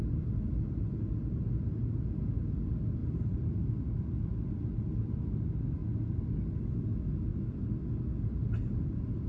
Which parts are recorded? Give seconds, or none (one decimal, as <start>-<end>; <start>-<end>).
0.0-3.0; 3.7-9.3